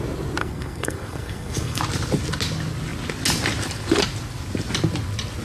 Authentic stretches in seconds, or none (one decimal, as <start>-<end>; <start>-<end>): 0.0-0.4; 1.8-5.4